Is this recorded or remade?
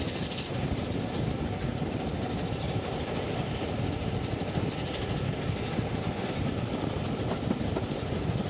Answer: recorded